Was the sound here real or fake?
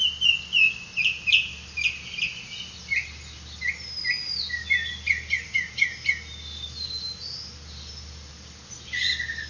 real